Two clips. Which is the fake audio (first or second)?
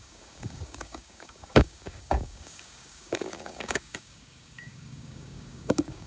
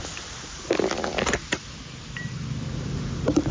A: first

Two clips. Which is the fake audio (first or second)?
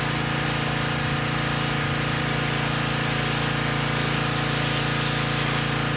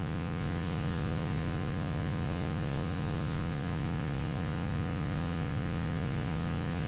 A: second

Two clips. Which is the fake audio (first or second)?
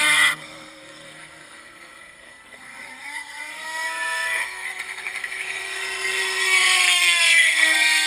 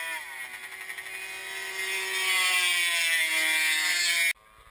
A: first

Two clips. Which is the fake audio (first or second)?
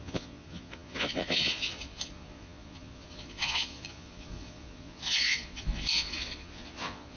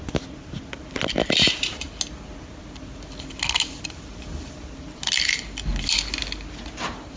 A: first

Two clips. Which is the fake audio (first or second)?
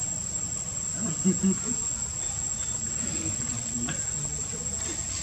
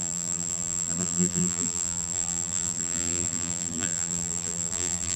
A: second